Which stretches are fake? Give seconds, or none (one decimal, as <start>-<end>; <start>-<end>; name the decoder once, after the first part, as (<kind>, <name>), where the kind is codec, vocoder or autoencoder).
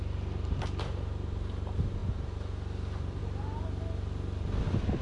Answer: none